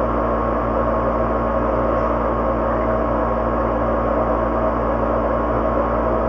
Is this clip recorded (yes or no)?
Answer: yes